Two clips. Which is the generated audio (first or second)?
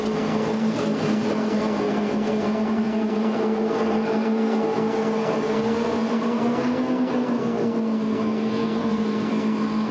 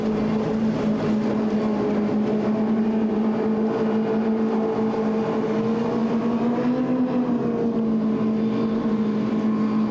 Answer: first